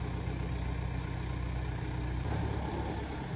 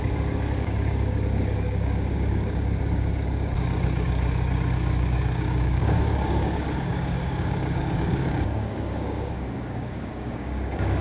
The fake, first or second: second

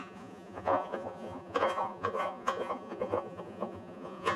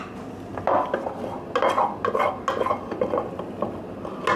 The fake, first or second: first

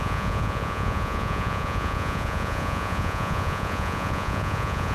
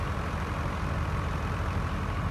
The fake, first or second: first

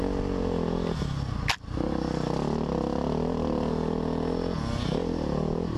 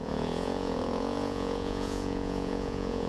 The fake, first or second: second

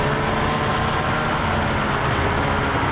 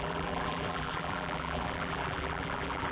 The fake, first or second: second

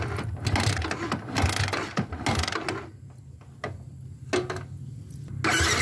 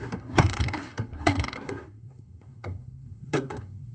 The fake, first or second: second